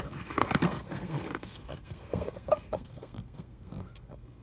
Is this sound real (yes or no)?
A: no